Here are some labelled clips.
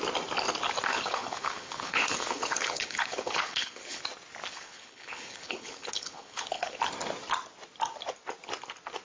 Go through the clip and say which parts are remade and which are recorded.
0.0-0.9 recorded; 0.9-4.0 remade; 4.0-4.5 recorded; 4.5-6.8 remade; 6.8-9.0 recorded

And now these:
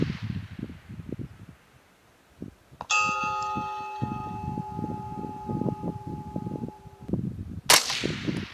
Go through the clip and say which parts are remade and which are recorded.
0.0-8.5 recorded

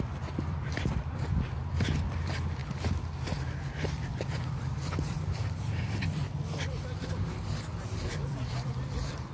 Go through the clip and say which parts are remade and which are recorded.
0.0-2.6 remade; 2.6-3.8 recorded; 3.8-9.3 remade